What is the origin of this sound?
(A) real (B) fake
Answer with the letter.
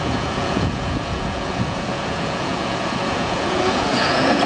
B